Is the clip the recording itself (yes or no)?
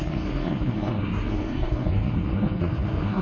no